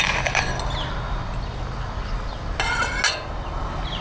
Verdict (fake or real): real